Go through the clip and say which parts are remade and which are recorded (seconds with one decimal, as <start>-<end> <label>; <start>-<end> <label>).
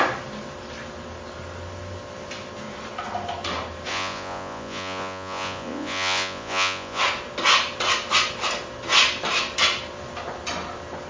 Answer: 0.0-3.9 recorded; 3.9-7.0 remade; 7.0-11.1 recorded